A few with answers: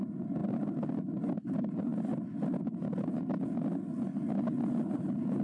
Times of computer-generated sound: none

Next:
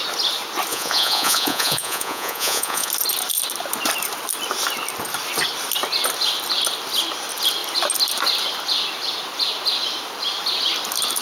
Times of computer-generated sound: 0.7-2.9 (vocoder, Vocos)

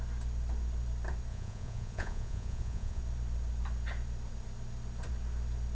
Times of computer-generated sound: 1.3-3.0 (vocoder, Vocos)